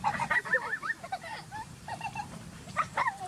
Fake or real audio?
fake